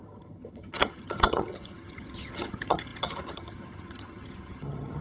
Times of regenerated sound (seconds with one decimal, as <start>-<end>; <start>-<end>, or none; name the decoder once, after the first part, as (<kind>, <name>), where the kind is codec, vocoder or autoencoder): 0.0-5.0 (vocoder, HiFi-GAN)